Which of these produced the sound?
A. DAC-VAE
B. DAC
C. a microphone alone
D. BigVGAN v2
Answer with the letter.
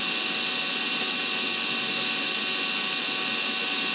C